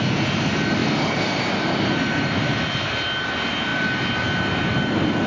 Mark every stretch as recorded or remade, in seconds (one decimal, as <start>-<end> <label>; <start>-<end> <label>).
0.0-5.3 recorded